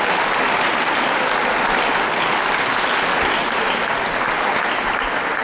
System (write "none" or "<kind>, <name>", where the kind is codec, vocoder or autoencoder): none